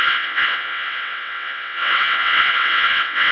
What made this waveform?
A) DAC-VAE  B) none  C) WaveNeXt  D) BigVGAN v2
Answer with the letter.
C